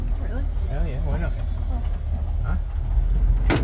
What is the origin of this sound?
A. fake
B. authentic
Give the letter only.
B